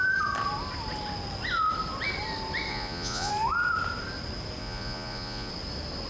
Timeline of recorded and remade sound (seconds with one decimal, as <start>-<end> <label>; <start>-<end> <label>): 0.0-2.7 recorded; 2.7-3.3 remade; 3.3-4.6 recorded; 4.6-5.5 remade; 5.5-6.1 recorded